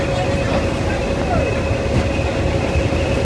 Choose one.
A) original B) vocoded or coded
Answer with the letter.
A